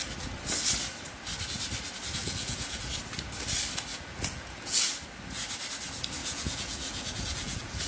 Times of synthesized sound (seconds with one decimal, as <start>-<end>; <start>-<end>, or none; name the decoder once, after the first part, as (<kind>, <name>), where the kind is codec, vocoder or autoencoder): 2.2-2.9 (vocoder, Vocos); 3.9-4.9; 6.2-7.9